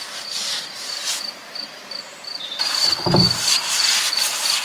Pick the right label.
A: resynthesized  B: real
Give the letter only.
A